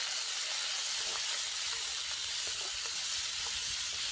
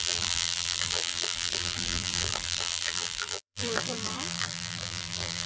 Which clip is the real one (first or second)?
first